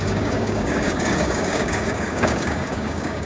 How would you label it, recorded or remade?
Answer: remade